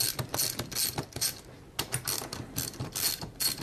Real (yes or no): yes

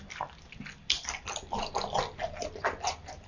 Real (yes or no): yes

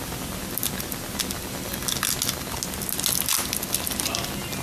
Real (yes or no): yes